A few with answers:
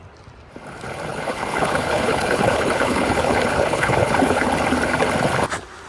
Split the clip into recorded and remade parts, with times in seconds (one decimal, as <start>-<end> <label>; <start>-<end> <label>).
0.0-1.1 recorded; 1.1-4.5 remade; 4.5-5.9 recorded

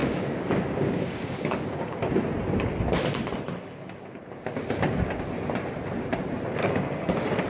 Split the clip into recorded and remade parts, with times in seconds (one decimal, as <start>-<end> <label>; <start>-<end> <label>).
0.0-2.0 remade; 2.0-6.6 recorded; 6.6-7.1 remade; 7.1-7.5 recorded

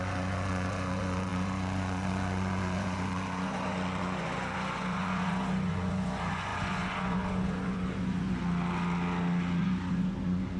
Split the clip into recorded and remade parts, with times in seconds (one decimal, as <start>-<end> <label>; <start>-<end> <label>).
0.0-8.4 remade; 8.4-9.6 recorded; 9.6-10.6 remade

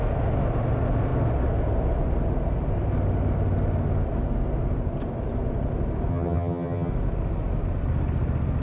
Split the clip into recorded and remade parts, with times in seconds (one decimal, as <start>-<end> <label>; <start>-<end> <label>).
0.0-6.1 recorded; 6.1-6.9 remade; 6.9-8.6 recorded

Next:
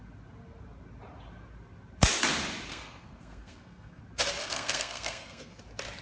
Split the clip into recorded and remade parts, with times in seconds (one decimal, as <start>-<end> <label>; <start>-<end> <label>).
0.0-2.7 recorded; 2.7-4.0 remade; 4.0-4.4 recorded; 4.4-5.6 remade; 5.6-6.0 recorded

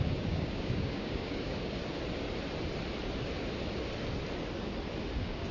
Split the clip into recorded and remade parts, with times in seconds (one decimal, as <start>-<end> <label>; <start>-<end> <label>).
0.0-1.8 remade; 1.8-5.1 recorded; 5.1-5.5 remade

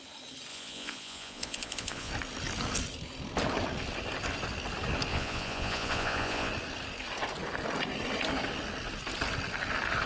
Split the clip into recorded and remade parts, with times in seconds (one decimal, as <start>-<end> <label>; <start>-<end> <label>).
0.0-0.5 recorded; 0.5-2.1 remade; 2.1-5.1 recorded; 5.1-6.5 remade; 6.5-10.1 recorded

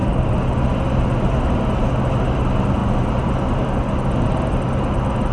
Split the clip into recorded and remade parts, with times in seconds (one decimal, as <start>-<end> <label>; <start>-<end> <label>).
0.0-5.3 recorded